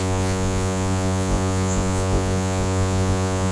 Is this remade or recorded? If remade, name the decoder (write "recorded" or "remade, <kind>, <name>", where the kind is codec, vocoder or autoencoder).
remade, vocoder, Vocos